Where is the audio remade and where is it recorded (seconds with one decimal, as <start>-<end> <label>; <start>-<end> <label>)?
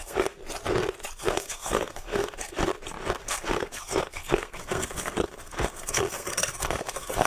0.0-0.4 remade; 0.4-1.2 recorded; 1.2-2.7 remade; 2.7-3.2 recorded; 3.2-7.3 remade